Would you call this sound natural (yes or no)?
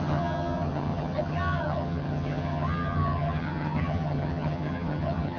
no